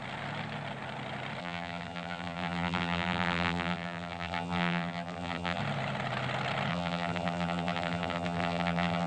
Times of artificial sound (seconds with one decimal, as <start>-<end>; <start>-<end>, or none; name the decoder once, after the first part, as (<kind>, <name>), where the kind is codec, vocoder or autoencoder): 1.4-5.6 (vocoder, BigVGAN v2); 6.7-9.1